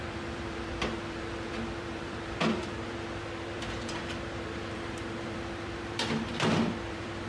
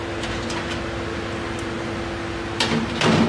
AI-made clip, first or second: first